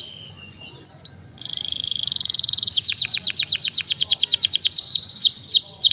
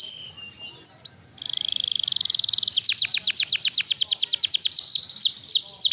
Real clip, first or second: second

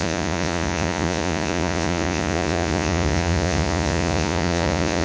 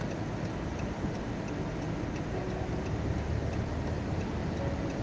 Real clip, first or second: second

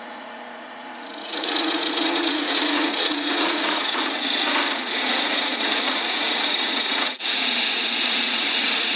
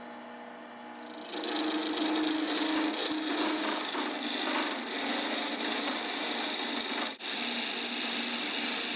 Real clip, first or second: second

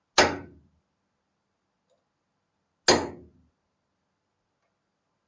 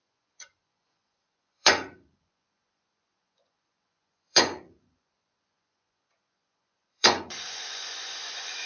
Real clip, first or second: first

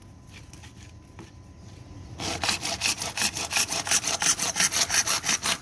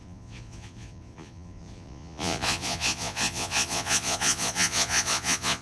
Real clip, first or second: first